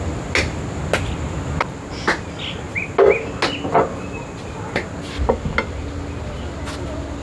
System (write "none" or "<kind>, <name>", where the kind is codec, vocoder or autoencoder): none